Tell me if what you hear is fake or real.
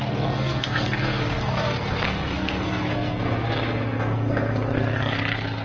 fake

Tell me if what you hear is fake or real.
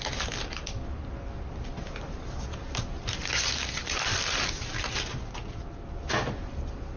real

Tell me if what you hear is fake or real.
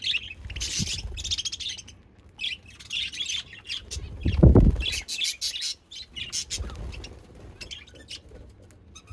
real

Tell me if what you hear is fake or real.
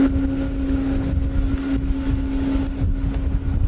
real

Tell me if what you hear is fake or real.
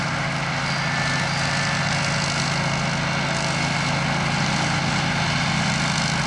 real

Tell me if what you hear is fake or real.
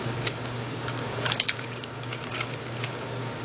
fake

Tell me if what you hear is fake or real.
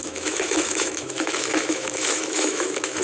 fake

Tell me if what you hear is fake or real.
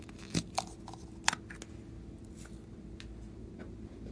real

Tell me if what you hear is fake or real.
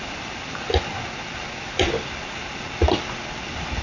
real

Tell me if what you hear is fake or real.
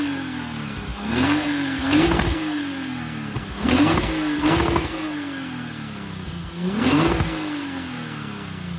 fake